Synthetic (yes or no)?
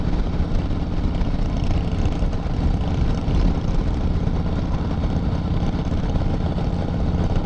no